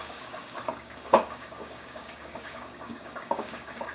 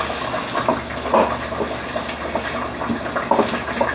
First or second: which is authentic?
second